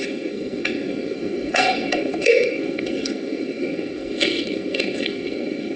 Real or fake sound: fake